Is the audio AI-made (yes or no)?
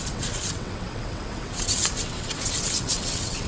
yes